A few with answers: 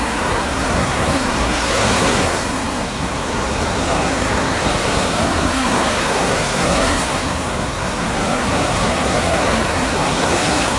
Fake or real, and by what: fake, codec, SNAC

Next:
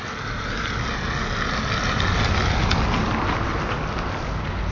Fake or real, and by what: real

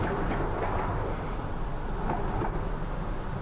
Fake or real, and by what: real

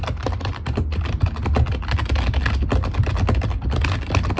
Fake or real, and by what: real